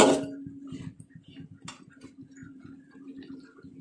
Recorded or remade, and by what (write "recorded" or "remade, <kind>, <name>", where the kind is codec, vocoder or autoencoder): recorded